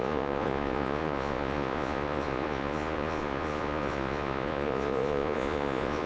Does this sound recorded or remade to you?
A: remade